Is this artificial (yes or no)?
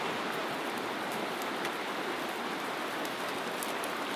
no